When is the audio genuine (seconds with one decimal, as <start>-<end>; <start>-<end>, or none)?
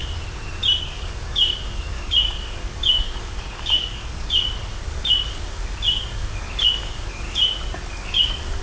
0.0-0.8; 7.4-7.9